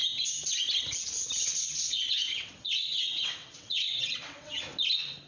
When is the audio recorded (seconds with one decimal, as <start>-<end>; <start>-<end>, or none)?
0.0-1.4; 4.6-5.3